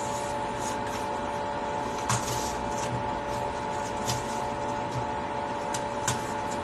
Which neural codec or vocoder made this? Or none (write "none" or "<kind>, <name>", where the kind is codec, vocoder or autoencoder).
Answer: none